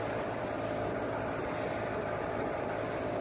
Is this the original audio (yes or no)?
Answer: yes